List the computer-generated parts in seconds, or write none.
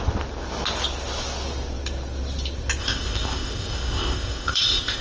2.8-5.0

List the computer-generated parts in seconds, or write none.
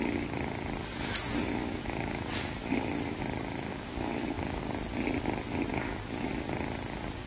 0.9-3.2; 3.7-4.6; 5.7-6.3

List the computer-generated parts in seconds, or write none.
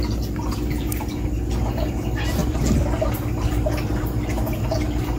none